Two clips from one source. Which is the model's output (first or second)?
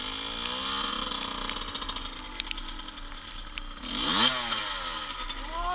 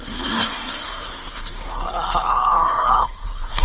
second